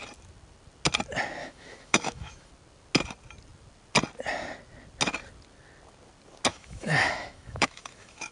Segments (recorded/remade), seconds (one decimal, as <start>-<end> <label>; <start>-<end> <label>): 0.0-1.4 recorded; 1.4-2.5 remade; 2.5-6.5 recorded; 6.5-8.3 remade

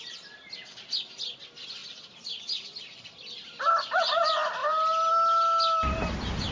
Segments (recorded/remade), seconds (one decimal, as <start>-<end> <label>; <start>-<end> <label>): 0.0-6.5 recorded

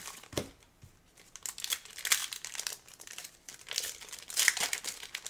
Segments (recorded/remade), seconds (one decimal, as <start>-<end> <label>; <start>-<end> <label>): 0.0-2.2 recorded; 2.2-4.8 remade; 4.8-5.3 recorded

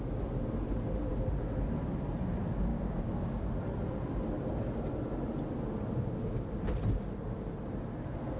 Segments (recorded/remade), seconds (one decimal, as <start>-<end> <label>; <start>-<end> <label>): 0.0-2.7 recorded; 2.7-3.6 remade; 3.6-8.4 recorded

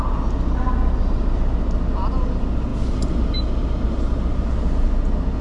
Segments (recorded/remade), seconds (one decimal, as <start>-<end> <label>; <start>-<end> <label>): 0.0-5.4 recorded

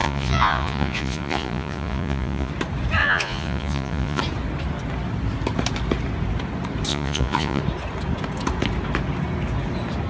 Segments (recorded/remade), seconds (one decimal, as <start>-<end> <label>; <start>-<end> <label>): 0.0-2.5 remade; 2.5-3.0 recorded; 3.0-4.2 remade; 4.2-6.9 recorded; 6.9-7.6 remade; 7.6-10.1 recorded

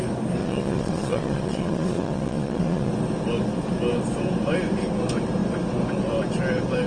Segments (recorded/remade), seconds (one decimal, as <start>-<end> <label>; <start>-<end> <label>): 0.0-0.4 recorded; 0.4-2.9 remade; 2.9-6.9 recorded

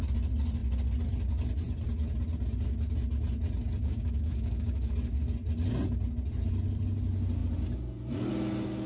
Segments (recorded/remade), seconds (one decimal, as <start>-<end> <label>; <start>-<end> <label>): 0.0-3.8 recorded; 3.8-4.9 remade; 4.9-8.9 recorded